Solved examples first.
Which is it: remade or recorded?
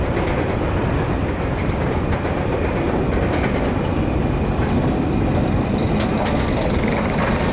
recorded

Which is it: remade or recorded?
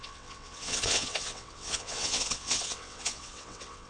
remade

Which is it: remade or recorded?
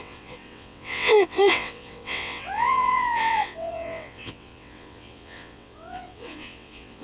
remade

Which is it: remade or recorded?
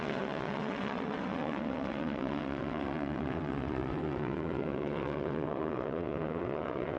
remade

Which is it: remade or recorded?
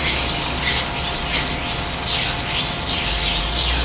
recorded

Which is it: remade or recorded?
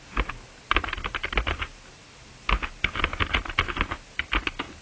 recorded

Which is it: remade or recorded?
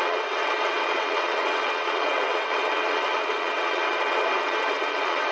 remade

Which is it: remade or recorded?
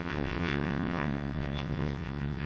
remade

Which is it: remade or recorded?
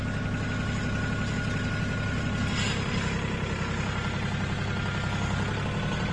recorded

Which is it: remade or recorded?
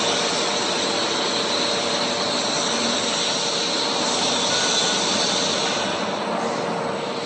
recorded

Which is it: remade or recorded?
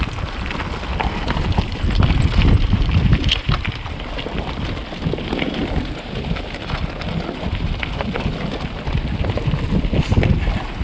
recorded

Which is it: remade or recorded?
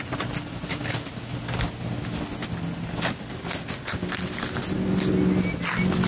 recorded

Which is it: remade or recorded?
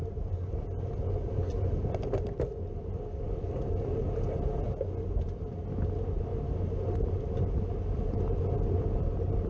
recorded